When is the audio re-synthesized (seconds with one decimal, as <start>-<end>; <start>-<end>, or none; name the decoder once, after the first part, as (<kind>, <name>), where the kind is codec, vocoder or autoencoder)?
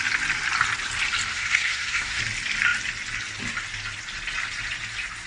1.3-2.2 (codec, SNAC)